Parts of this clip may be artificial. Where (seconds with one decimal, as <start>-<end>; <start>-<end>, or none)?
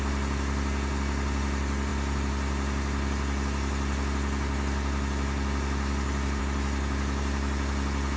none